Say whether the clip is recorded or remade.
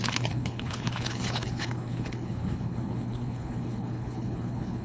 remade